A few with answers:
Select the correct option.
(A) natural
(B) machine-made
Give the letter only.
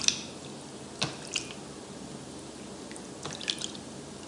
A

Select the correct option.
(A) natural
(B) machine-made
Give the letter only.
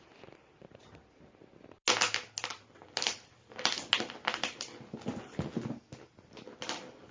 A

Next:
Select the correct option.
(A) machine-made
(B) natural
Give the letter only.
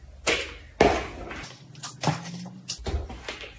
B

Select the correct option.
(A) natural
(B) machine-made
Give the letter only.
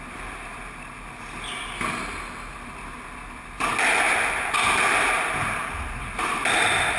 A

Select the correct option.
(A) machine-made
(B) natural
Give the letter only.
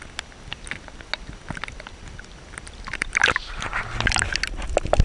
B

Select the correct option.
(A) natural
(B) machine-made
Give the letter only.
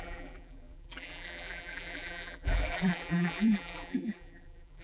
B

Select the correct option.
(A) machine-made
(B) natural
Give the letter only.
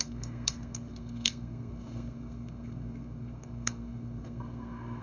A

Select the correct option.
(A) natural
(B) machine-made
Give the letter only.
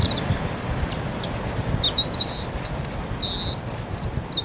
A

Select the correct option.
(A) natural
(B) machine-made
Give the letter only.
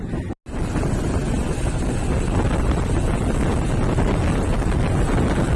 A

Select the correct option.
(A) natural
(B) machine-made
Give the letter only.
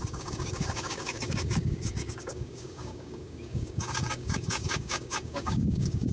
B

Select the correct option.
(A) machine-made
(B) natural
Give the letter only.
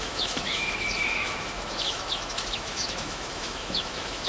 A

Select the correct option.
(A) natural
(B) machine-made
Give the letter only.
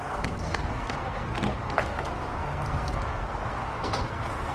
B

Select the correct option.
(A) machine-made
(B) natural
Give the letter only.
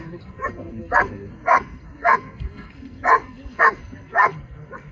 A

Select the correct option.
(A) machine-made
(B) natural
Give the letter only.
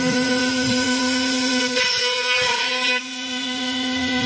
A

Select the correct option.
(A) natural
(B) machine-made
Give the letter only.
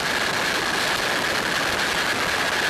A